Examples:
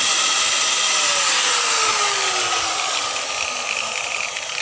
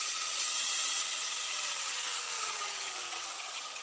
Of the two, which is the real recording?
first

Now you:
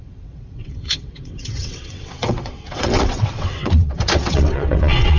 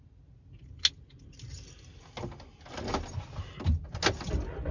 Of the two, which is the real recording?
second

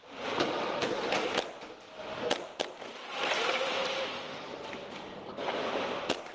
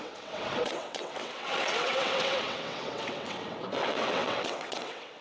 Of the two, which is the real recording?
first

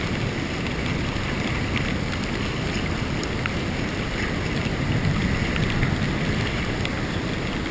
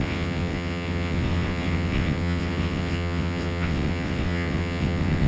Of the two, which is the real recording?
first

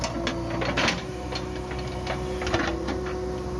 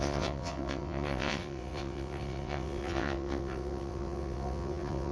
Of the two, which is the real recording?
first